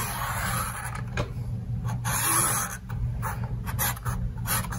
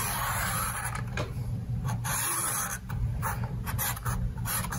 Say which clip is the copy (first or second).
second